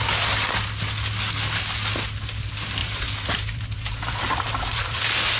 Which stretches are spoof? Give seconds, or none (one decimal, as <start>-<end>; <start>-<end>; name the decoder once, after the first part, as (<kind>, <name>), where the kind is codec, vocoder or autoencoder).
2.8-5.0 (vocoder, BigVGAN v2)